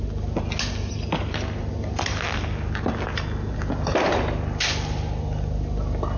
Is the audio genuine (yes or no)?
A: yes